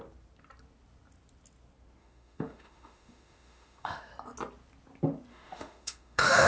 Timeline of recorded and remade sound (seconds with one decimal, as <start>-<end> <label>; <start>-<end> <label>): 0.0-2.0 recorded; 2.0-4.1 remade; 4.1-5.3 recorded; 5.3-6.5 remade

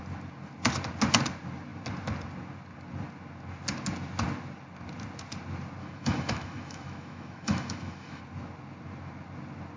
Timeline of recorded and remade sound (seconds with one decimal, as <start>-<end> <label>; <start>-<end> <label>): 0.0-5.8 recorded; 5.8-8.2 remade; 8.2-9.8 recorded